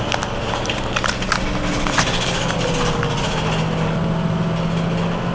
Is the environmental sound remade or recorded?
recorded